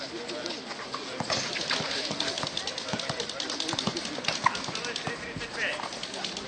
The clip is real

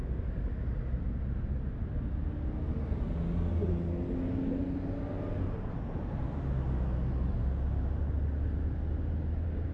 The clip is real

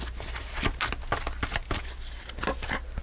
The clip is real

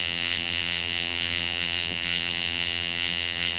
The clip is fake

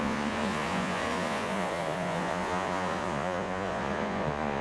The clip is fake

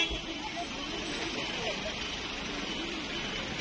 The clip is real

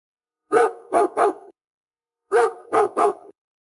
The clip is fake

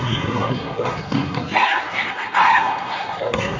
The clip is fake